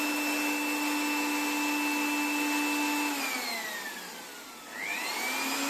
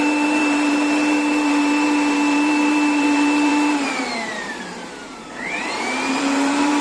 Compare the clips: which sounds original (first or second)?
first